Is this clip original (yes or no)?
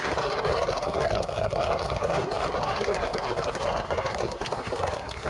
no